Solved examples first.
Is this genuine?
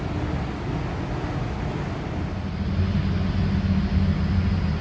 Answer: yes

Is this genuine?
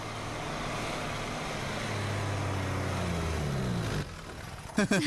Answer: yes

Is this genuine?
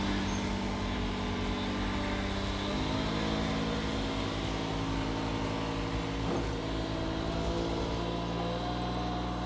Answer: yes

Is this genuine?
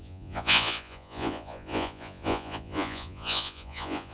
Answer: no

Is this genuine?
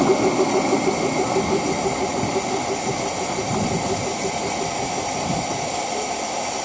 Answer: yes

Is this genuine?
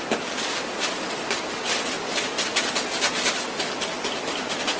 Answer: yes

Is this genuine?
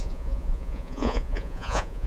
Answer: no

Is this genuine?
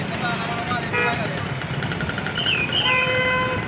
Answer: yes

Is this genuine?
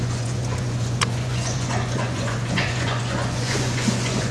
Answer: no